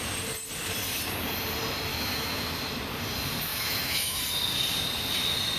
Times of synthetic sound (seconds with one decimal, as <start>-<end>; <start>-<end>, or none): 1.9-2.6; 3.5-4.2

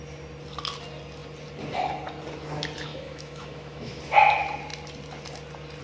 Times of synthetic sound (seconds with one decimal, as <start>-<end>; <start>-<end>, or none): 2.9-4.0

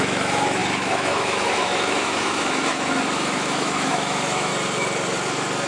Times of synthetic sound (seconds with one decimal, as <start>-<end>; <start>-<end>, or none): 0.0-4.5

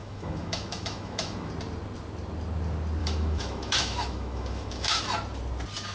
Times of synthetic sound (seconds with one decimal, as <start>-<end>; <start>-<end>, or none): 0.0-1.5; 3.0-5.0